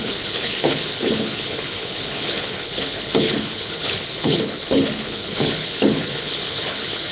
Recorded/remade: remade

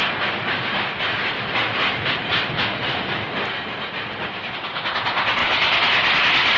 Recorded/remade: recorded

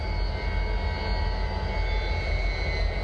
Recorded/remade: recorded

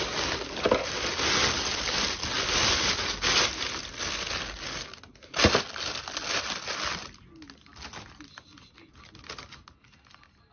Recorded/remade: recorded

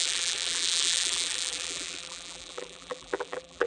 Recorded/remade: remade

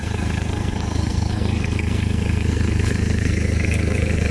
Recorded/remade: remade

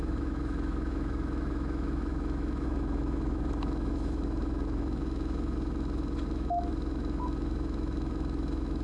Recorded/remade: remade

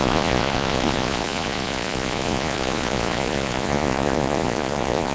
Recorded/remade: remade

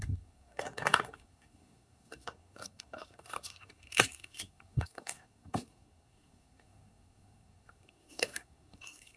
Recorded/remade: remade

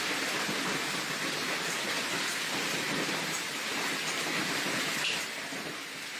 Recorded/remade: recorded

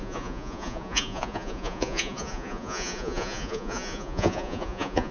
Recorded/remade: remade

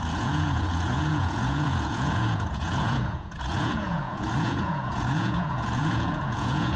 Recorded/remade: remade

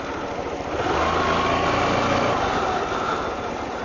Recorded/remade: recorded